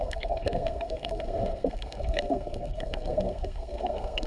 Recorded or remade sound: remade